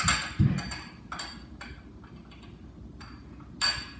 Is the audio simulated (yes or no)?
no